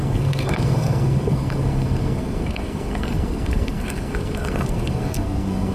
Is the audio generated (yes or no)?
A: yes